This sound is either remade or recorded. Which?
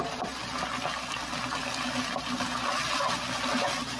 recorded